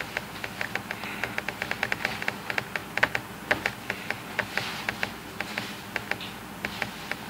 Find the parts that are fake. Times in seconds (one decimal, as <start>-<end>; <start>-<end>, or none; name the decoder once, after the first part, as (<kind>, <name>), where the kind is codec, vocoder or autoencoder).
none